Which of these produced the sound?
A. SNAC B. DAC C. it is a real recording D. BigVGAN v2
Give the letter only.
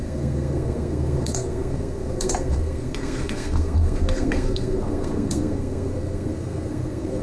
A